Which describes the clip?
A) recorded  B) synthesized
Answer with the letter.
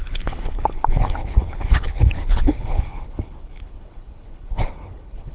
B